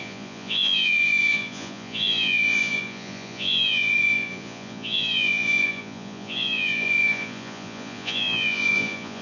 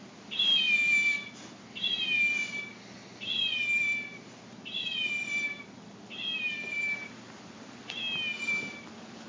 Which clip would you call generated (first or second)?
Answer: first